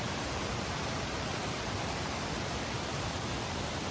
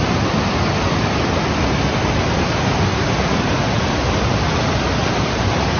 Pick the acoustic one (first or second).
second